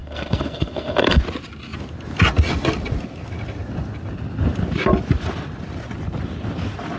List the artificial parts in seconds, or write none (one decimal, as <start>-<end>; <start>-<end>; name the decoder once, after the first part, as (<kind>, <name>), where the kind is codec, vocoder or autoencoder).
0.0-1.2 (codec, SNAC)